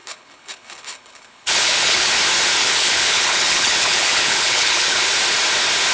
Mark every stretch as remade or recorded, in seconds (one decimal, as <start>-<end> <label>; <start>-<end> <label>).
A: 0.0-2.1 remade; 2.1-2.6 recorded; 2.6-5.1 remade; 5.1-5.9 recorded